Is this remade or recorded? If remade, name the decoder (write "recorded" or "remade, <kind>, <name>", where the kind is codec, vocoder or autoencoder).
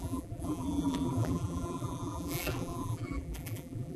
remade, vocoder, BigVGAN v2